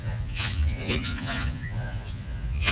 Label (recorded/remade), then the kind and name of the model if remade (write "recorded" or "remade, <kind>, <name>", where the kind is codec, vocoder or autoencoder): remade, vocoder, Vocos